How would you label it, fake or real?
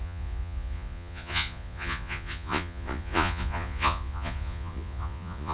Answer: fake